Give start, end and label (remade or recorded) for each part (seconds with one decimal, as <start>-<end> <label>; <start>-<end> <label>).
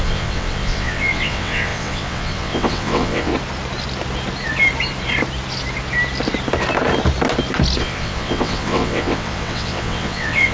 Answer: 0.0-3.3 remade; 3.3-7.8 recorded; 7.8-10.5 remade